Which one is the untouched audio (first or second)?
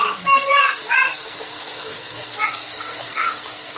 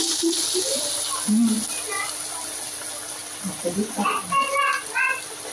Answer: second